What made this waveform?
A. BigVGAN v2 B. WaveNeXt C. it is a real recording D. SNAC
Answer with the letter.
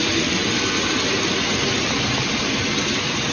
C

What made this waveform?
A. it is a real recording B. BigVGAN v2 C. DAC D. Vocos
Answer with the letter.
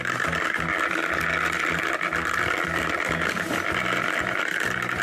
A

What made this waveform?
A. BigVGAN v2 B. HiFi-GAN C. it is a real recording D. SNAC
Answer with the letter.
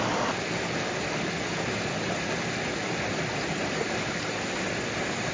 C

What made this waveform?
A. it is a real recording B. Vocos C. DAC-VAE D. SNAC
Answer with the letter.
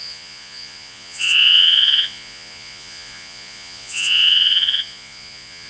B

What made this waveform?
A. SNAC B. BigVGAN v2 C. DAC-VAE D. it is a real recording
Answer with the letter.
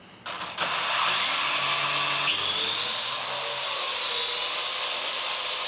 D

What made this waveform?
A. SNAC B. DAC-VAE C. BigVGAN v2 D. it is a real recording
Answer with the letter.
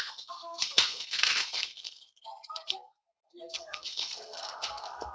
A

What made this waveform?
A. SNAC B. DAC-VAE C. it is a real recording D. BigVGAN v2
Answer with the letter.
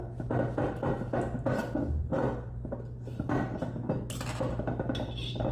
C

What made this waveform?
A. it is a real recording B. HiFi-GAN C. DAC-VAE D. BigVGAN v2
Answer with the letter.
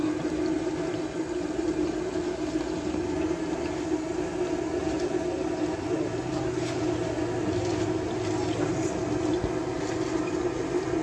A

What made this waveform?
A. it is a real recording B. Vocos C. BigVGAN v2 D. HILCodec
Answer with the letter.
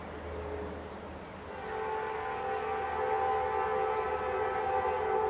A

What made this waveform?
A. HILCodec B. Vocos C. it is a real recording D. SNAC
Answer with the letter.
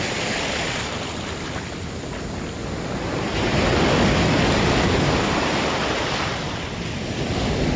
C